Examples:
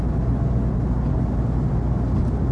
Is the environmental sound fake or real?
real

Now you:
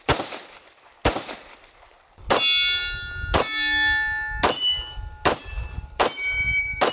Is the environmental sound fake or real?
real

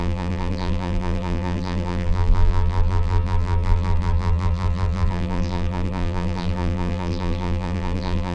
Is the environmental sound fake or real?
fake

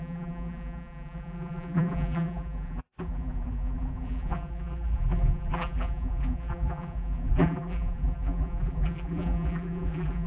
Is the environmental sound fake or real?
fake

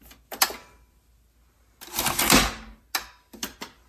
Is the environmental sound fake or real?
real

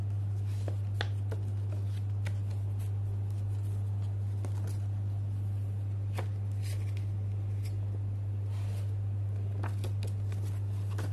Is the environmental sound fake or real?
real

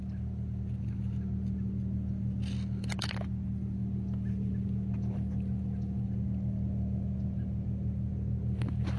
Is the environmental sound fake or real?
fake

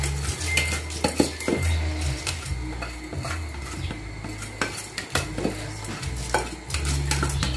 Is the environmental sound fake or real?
real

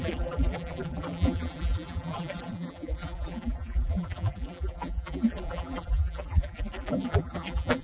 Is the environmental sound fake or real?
fake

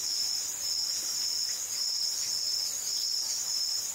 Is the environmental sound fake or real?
real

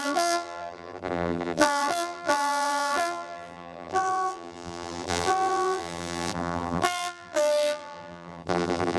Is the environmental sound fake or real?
fake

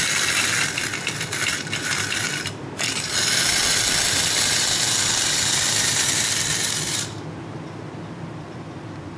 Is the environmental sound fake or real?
fake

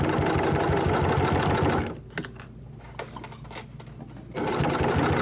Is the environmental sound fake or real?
real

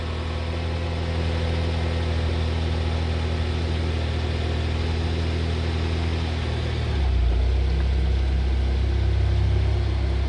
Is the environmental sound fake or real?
real